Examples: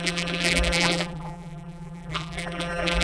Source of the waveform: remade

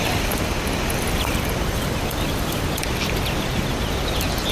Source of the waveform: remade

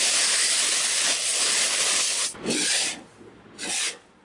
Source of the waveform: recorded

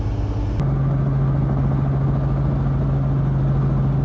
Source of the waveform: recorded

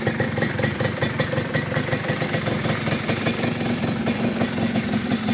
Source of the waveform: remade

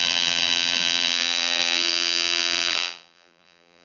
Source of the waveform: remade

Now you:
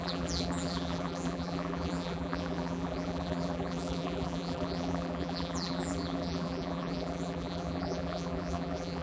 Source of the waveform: remade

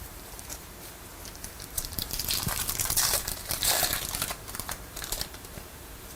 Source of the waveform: remade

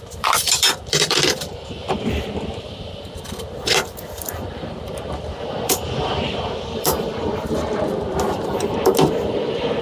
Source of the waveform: remade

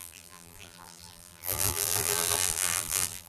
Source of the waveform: remade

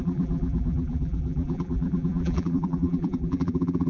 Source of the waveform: remade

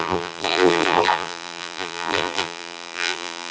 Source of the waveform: remade